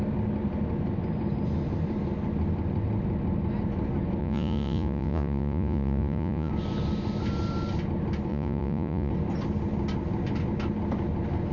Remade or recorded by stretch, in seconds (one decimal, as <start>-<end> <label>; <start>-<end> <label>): 0.0-4.2 recorded; 4.2-6.5 remade; 6.5-8.3 recorded; 8.3-9.1 remade; 9.1-11.5 recorded